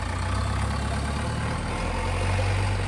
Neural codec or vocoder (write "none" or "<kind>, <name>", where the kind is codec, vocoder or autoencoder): none